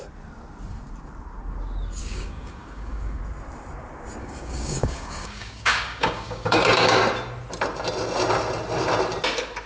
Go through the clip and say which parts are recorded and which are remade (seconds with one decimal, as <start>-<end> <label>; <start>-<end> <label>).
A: 0.0-2.0 recorded; 2.0-3.2 remade; 3.2-4.2 recorded; 4.2-7.0 remade; 7.0-9.7 recorded